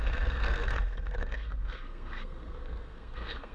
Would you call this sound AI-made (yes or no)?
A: yes